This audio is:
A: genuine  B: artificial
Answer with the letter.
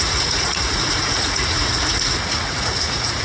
B